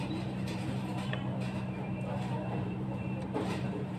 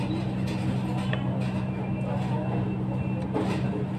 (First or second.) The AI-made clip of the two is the first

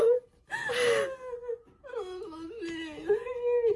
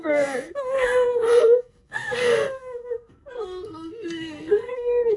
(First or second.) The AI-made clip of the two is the second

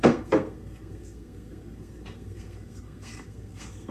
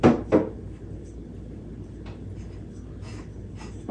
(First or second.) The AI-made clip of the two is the first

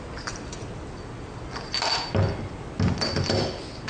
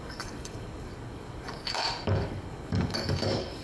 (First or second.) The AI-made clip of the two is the second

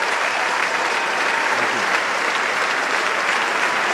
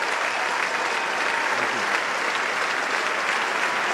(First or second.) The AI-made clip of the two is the first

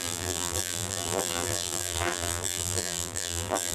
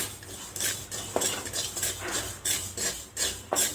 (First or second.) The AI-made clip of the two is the first